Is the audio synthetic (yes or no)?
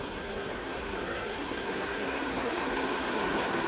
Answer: yes